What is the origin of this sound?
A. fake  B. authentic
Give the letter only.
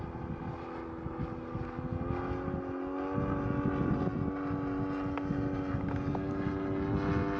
B